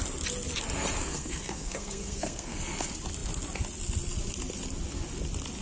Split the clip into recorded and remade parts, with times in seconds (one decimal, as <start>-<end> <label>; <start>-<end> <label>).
0.0-1.0 recorded; 1.0-2.6 remade; 2.6-5.6 recorded